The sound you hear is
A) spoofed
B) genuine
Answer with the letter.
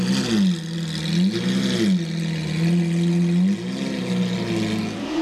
B